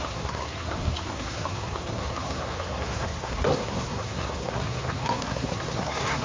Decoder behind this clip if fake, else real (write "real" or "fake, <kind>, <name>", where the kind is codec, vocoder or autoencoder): fake, codec, SNAC